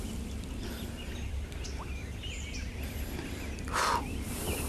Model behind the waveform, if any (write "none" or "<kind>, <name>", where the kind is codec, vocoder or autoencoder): none